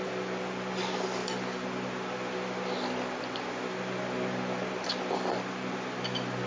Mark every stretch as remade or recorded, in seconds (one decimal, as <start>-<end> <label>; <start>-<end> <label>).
0.0-6.5 recorded